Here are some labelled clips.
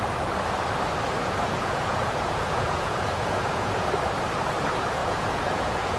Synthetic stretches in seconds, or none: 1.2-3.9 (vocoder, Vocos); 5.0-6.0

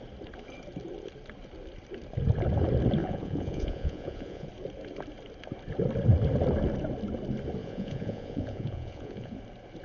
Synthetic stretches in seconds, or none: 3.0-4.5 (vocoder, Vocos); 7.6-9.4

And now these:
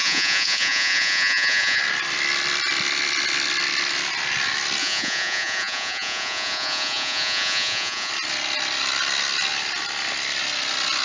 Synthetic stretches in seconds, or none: 0.0-1.8 (vocoder, Vocos); 4.8-8.1

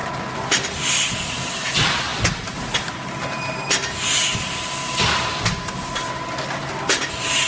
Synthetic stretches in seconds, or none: none